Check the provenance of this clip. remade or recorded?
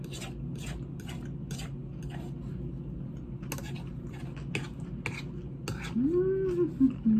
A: recorded